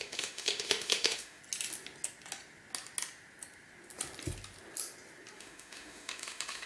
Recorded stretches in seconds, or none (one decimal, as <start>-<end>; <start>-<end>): 1.4-5.4